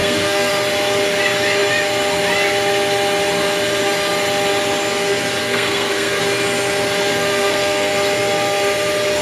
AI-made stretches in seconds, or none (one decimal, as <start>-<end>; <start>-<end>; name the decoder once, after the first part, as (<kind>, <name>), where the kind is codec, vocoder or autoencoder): 0.0-0.5 (codec, SNAC); 5.4-6.2; 7.1-7.9